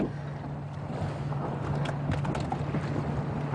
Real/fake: real